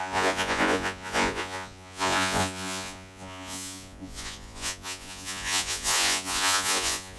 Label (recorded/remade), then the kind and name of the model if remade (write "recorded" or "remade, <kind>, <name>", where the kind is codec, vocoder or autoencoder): remade, vocoder, Vocos